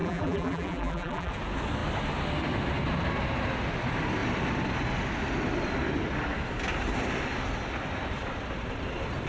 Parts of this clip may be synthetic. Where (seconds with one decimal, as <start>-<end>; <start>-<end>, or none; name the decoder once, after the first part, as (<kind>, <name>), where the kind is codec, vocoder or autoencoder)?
0.0-1.3 (vocoder, BigVGAN v2)